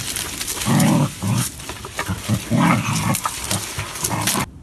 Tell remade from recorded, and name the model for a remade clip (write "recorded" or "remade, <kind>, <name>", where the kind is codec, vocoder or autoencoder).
recorded